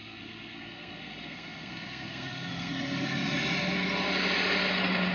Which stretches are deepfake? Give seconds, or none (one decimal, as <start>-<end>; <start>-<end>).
0.0-2.7